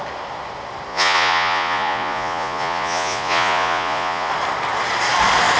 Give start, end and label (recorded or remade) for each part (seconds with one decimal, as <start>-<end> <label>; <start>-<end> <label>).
0.0-0.9 recorded; 0.9-4.3 remade; 4.3-5.6 recorded